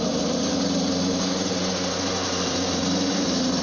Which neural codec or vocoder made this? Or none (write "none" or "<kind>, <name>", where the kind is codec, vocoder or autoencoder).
none